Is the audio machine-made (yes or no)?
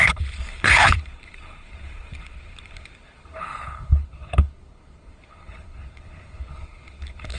yes